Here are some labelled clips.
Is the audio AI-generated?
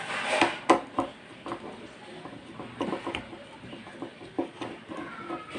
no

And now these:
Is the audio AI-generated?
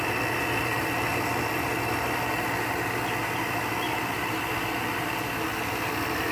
no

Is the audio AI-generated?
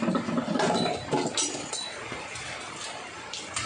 no